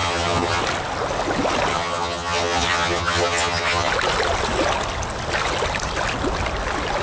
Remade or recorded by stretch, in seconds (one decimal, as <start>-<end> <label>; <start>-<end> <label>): 0.0-0.6 remade; 0.6-1.7 recorded; 1.7-3.9 remade; 3.9-7.0 recorded